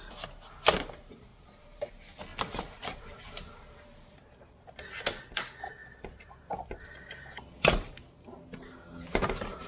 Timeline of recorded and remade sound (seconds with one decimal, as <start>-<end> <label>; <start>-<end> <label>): 0.0-1.3 recorded; 1.3-1.9 remade; 1.9-2.3 recorded; 2.3-4.5 remade; 4.5-5.8 recorded; 5.8-6.8 remade; 6.8-9.7 recorded

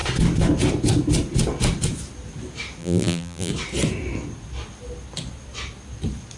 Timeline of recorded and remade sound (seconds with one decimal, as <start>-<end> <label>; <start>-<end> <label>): 0.0-2.8 recorded; 2.8-3.5 remade; 3.5-6.4 recorded

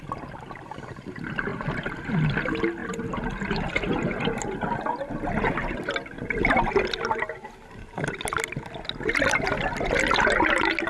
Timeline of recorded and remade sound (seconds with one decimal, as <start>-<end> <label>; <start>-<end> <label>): 0.0-1.5 recorded; 1.5-2.1 remade; 2.1-2.8 recorded; 2.8-4.8 remade; 4.8-10.9 recorded

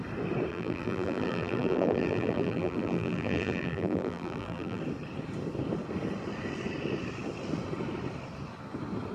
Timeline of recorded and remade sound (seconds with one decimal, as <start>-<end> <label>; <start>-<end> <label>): 0.0-0.5 recorded; 0.5-4.8 remade; 4.8-9.1 recorded

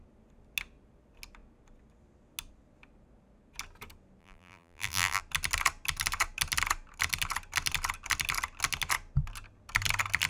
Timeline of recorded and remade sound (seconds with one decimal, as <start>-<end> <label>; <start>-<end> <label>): 0.0-4.2 recorded; 4.2-5.2 remade; 5.2-10.3 recorded

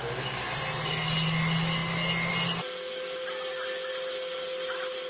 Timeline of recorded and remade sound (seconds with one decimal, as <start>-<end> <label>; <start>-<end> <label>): 0.0-5.1 recorded

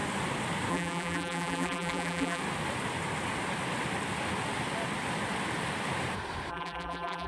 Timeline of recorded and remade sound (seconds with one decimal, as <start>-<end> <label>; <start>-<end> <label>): 0.0-0.7 recorded; 0.7-2.4 remade; 2.4-6.5 recorded; 6.5-7.3 remade